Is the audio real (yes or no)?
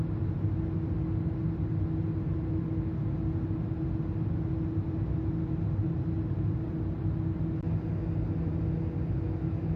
yes